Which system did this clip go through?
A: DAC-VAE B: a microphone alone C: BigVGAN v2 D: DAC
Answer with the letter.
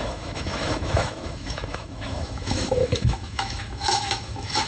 A